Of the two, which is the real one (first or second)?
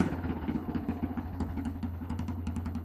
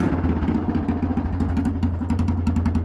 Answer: second